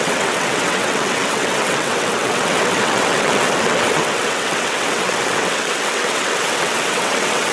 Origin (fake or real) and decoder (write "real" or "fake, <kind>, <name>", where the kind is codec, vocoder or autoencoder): fake, vocoder, WaveNeXt